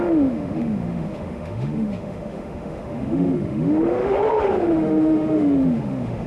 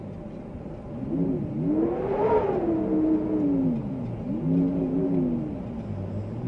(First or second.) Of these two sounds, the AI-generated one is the first